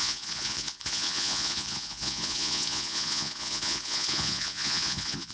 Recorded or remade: remade